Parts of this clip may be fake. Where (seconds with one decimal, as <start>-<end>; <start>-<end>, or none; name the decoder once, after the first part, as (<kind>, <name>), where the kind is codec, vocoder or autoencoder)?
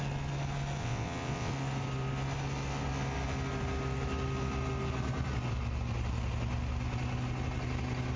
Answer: 0.8-1.5 (vocoder, WaveNeXt)